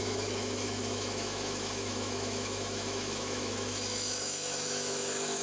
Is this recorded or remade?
remade